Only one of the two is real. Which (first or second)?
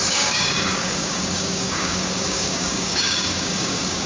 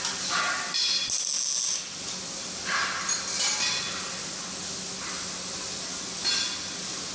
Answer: second